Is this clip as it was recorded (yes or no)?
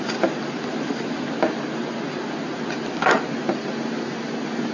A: yes